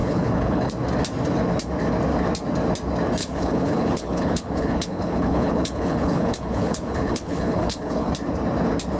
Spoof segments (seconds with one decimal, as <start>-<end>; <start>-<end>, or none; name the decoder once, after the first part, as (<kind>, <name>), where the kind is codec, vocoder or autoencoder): 0.0-0.7 (codec, HILCodec); 3.2-8.1